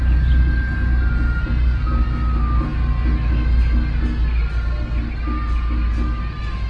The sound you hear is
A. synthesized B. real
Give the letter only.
B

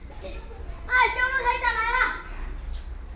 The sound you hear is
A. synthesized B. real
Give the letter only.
B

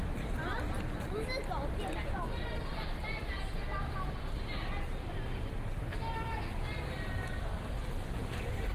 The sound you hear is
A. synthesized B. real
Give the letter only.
B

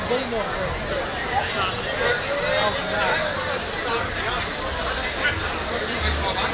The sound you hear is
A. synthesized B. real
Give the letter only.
B